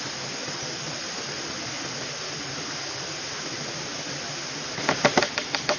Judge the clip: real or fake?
real